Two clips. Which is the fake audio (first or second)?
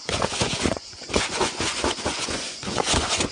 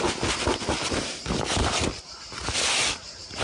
first